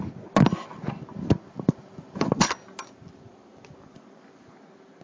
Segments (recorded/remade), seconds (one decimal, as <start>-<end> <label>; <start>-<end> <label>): 0.0-5.0 recorded